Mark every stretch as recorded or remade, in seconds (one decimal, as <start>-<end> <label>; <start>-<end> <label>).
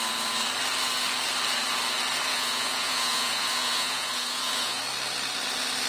0.0-2.3 recorded; 2.3-4.8 remade; 4.8-5.9 recorded